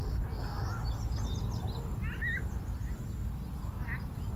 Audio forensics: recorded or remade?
recorded